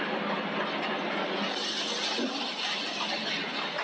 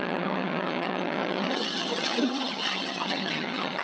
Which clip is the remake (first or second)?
second